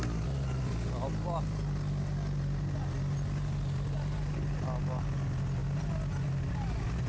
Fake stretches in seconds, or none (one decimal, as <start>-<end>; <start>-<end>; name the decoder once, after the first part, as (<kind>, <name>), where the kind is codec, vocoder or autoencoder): none